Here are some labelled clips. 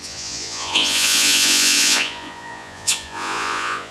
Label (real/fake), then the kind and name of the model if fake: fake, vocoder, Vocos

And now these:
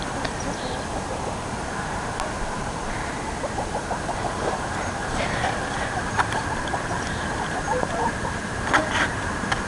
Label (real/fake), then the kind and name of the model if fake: fake, vocoder, BigVGAN v2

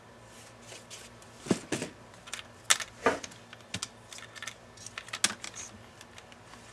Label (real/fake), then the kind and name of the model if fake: real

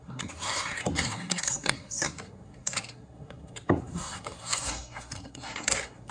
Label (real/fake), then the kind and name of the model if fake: fake, codec, SNAC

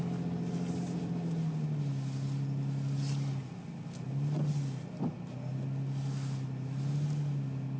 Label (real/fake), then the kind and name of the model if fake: real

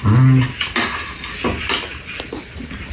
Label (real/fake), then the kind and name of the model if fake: real